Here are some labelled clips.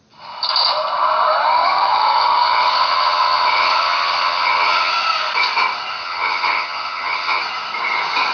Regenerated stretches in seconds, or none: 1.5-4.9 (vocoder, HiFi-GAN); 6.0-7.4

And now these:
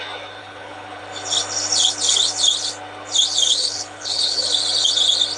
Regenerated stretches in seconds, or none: 0.4-1.0 (codec, HILCodec); 3.5-4.5